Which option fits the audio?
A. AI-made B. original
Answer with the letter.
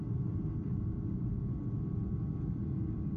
B